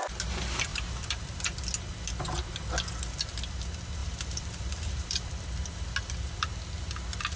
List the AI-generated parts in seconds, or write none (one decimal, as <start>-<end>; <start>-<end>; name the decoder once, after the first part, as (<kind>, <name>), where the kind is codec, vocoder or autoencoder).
4.0-5.3 (vocoder, BigVGAN v2)